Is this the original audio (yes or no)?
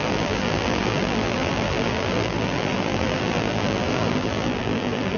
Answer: no